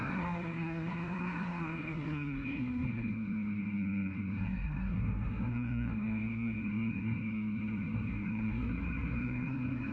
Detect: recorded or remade remade